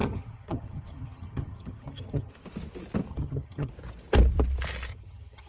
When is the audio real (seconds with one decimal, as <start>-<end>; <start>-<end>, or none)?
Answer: 2.3-3.1; 3.7-4.9